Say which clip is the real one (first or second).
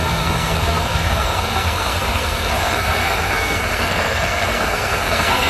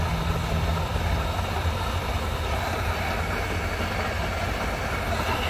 second